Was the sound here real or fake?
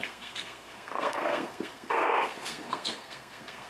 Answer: fake